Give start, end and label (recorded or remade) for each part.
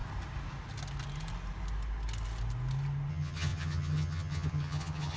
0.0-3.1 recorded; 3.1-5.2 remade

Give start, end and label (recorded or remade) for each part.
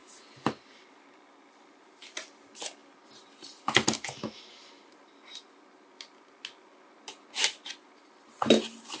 0.0-9.0 recorded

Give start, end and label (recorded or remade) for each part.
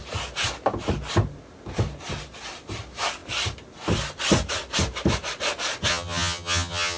0.0-5.9 recorded; 5.9-7.0 remade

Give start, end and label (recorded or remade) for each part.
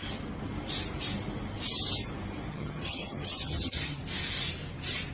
0.0-2.5 recorded; 2.5-4.0 remade; 4.0-5.1 recorded